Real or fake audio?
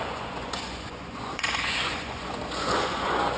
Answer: fake